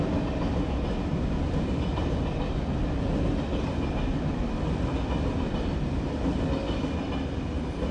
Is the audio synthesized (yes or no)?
no